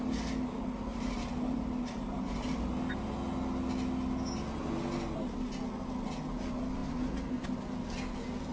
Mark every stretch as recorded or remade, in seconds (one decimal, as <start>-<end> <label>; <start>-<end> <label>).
0.0-0.9 recorded; 0.9-2.3 remade; 2.3-8.5 recorded